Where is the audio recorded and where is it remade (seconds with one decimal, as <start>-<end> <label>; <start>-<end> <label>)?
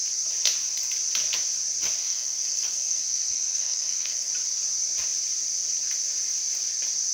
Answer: 0.0-2.0 recorded; 2.0-4.3 remade; 4.3-7.1 recorded